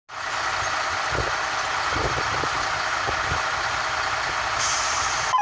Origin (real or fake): real